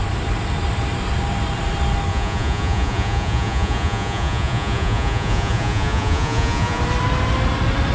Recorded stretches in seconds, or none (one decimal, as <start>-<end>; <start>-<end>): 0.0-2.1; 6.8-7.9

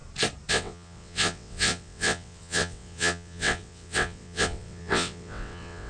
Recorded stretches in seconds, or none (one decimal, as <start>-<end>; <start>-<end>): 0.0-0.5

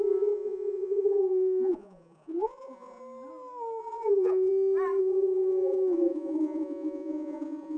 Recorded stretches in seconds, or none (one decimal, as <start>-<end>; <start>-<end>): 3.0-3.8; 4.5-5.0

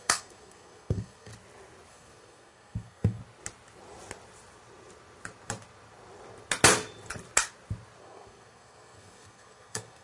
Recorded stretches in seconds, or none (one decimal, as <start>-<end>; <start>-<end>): 1.3-1.9; 3.2-8.0